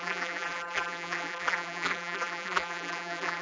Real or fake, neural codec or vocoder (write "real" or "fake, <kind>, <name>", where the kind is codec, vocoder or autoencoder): fake, vocoder, BigVGAN v2